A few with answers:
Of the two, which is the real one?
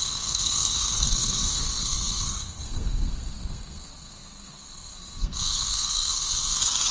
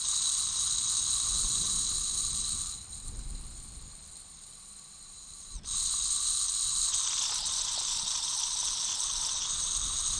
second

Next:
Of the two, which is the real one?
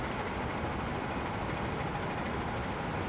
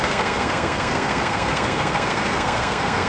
first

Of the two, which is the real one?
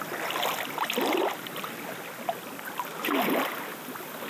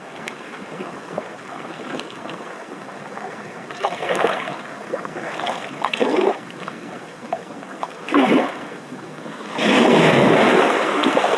first